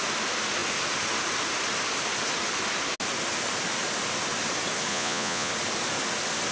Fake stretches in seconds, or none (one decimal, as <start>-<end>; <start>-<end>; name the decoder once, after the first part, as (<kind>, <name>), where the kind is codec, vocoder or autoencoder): 4.9-5.5 (vocoder, Vocos)